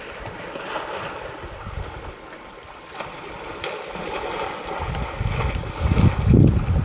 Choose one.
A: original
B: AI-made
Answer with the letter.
A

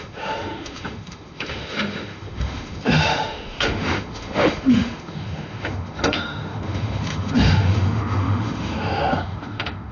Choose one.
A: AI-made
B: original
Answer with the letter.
A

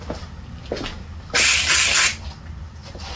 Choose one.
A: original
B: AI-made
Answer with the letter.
A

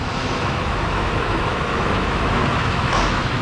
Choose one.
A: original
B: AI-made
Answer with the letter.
B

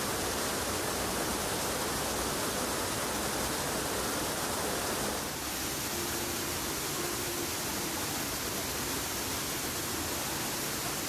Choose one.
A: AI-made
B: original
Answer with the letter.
B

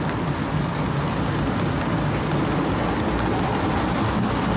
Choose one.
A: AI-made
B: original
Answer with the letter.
B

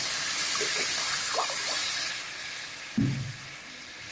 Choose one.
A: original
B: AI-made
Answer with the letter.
A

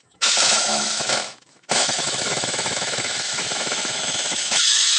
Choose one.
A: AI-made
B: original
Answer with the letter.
A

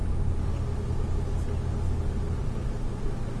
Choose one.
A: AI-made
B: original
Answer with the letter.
B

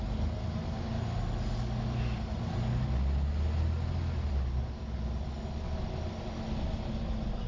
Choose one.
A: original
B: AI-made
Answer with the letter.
A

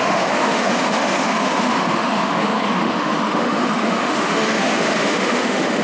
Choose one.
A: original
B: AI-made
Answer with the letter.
B